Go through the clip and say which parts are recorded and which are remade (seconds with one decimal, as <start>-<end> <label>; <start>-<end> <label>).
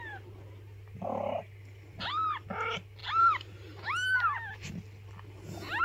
0.0-5.8 recorded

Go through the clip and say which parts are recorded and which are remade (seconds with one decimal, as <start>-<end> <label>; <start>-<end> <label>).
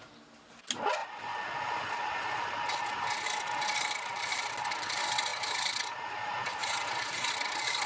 0.0-6.6 recorded; 6.6-7.3 remade; 7.3-7.9 recorded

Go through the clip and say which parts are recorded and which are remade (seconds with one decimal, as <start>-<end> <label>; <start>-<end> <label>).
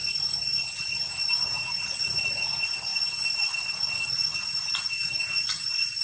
0.0-6.0 recorded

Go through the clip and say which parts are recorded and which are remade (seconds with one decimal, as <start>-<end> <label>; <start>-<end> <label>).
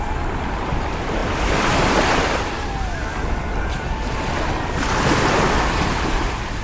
0.0-6.6 recorded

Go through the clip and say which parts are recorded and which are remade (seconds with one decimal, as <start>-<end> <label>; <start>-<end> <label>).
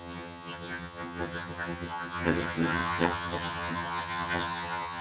0.0-5.0 remade